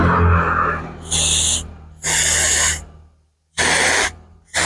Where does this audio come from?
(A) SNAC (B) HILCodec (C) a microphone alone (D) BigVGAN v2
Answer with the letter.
C